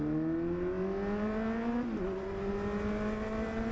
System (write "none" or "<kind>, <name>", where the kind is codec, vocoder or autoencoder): none